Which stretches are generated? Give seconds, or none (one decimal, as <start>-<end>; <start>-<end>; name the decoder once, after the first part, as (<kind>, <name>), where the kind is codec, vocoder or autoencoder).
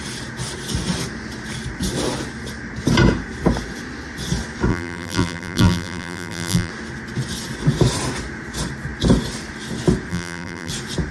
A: 4.7-6.7 (vocoder, BigVGAN v2); 10.1-10.7